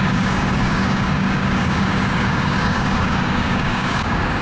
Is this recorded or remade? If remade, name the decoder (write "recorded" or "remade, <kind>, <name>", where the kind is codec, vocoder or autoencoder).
remade, codec, DAC